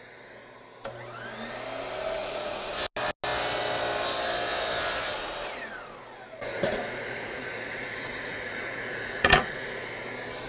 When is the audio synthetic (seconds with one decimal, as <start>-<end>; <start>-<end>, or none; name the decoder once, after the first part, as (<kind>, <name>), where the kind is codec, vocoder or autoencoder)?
2.2-2.7 (vocoder, Vocos); 6.5-9.9